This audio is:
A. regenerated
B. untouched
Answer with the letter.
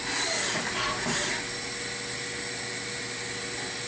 B